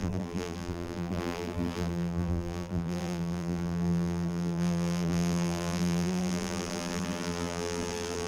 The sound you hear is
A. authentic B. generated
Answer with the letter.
B